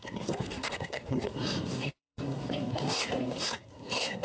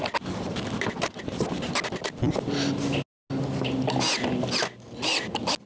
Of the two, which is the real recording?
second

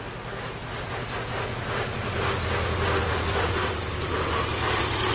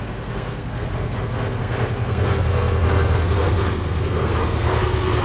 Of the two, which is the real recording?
first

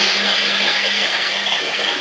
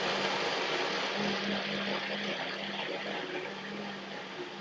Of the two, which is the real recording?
second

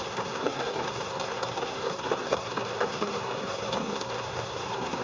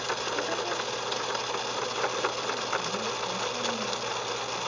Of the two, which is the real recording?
second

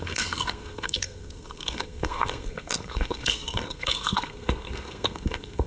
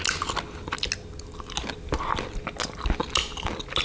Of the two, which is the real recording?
second